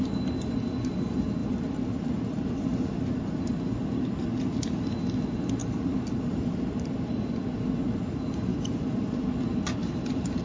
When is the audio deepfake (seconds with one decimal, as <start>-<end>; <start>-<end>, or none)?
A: 1.4-3.7; 5.6-7.1; 8.5-9.3; 9.8-10.4